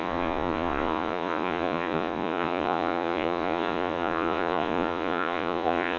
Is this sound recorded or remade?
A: remade